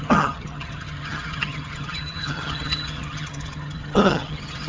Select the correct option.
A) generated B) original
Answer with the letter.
A